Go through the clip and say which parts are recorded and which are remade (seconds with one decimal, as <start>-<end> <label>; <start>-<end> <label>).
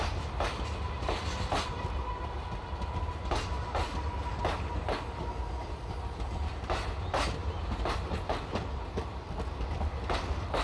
0.0-10.6 recorded